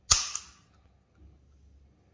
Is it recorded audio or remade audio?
recorded